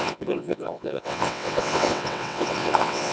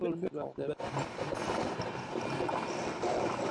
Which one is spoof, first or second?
first